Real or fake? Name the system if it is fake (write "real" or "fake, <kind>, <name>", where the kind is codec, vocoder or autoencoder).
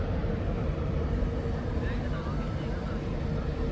real